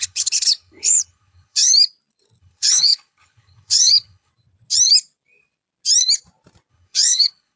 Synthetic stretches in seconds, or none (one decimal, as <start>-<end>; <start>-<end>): 0.0-1.7; 2.4-4.3; 6.7-7.6